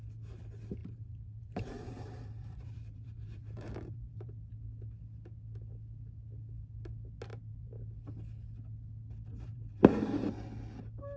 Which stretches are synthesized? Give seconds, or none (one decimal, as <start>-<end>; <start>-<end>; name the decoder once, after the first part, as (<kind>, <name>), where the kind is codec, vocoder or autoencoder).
0.8-4.5 (vocoder, BigVGAN v2); 7.3-7.8; 9.3-10.3